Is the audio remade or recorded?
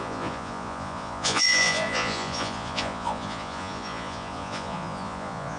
remade